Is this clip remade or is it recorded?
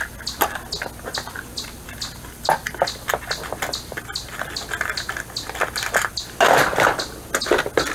recorded